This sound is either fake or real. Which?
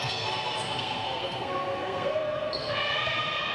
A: fake